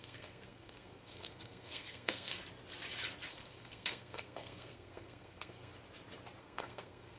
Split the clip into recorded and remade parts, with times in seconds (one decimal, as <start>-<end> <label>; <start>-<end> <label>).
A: 0.0-2.4 remade; 2.4-3.3 recorded; 3.3-5.7 remade; 5.7-6.4 recorded; 6.4-7.2 remade